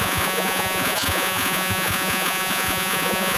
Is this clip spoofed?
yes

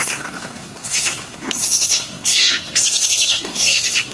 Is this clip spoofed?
yes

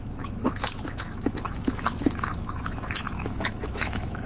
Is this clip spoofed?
yes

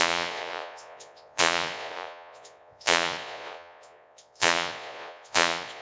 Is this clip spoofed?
yes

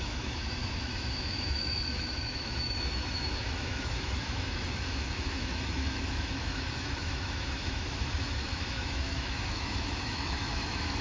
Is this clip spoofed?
yes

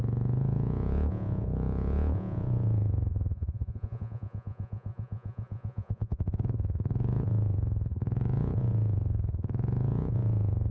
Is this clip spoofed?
yes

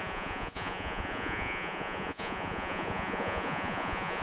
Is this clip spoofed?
yes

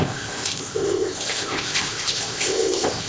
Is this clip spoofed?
yes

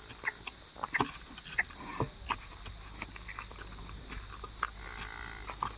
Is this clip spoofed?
no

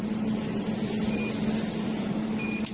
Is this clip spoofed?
no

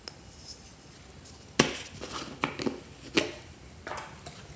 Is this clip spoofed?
no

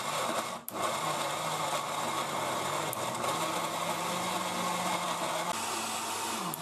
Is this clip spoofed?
no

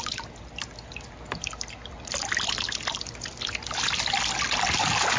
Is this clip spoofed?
no